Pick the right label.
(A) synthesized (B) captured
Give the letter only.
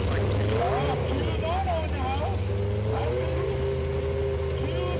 B